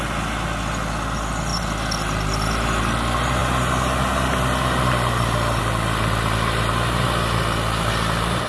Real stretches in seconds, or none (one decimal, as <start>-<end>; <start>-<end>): 0.0-8.5